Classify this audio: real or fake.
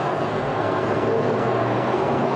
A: fake